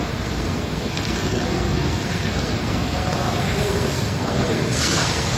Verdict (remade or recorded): remade